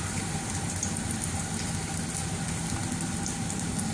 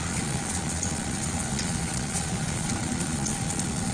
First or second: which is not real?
second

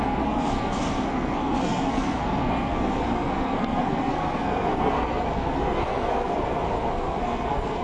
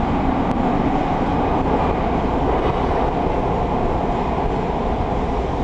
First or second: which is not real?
first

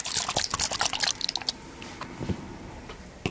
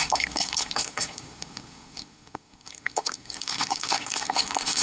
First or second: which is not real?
second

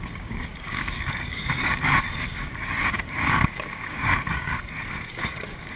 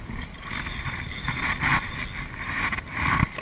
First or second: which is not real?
first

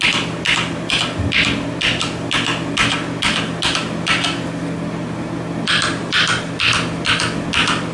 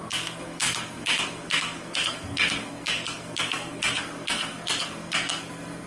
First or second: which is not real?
second